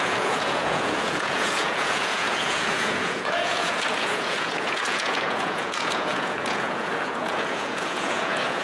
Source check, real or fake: fake